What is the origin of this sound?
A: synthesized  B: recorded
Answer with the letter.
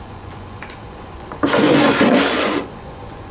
A